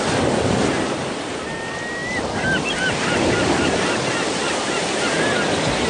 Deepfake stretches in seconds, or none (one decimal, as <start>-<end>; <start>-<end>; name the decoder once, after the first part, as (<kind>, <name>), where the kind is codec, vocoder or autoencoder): none